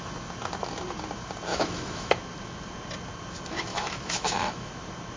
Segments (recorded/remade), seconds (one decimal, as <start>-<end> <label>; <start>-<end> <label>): 0.0-1.5 recorded; 1.5-2.1 remade; 2.1-3.7 recorded; 3.7-4.7 remade; 4.7-5.2 recorded